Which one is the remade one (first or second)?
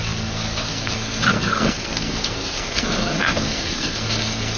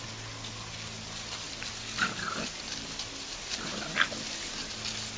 first